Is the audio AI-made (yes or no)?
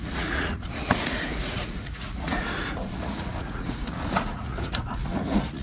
yes